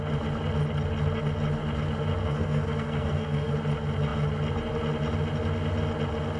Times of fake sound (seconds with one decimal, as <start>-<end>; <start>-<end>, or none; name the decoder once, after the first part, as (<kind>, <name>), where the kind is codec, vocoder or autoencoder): 2.2-3.5 (codec, SNAC)